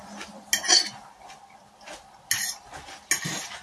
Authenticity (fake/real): real